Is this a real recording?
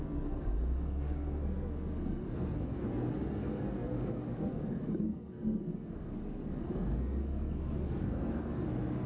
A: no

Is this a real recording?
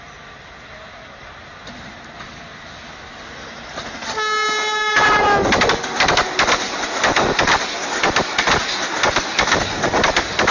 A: yes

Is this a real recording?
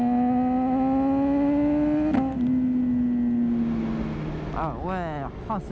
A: yes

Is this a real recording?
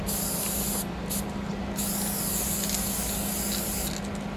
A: yes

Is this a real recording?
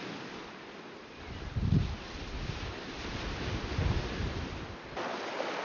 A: yes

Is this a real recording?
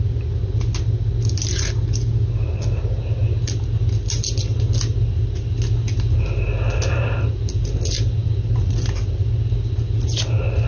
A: yes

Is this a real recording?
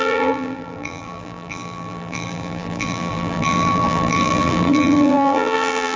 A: no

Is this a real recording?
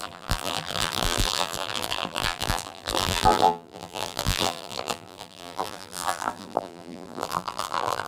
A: no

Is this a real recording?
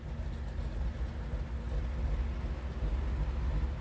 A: yes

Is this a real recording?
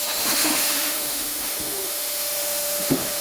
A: no